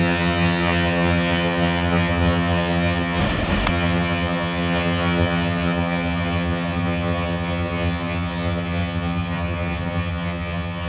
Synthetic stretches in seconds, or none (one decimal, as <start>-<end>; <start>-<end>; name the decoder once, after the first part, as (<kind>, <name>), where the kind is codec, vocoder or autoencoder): 0.0-3.2 (vocoder, HiFi-GAN); 3.7-10.9